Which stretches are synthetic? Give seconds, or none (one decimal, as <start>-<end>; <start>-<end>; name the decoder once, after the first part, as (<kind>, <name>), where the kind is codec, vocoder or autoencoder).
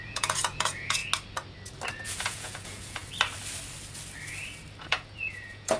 0.0-1.0 (vocoder, Vocos); 1.9-3.0; 4.8-5.8